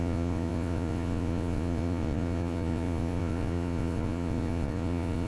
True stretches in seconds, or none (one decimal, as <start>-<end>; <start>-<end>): none

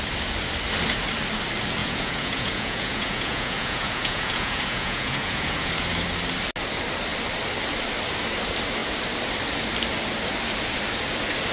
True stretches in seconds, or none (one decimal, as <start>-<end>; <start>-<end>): 0.0-1.8; 5.7-11.5

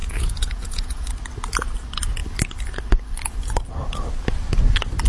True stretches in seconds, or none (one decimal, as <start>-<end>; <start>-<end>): 1.1-5.1

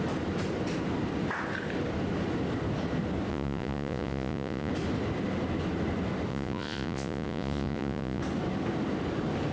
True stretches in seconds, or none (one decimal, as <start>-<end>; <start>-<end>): 0.0-3.3; 4.7-6.3; 8.2-9.5

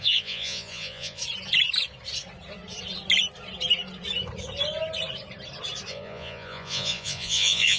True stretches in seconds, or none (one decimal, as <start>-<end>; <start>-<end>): 1.2-5.9

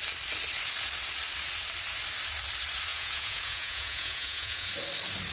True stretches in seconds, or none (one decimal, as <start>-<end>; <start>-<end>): 0.0-2.9; 4.7-5.3

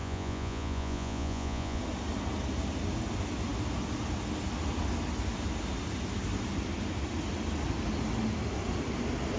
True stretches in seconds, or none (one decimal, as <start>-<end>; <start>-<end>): 1.8-9.4